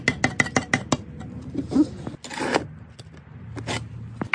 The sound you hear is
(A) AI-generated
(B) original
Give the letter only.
B